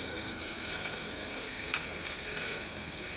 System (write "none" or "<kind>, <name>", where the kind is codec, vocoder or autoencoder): codec, SNAC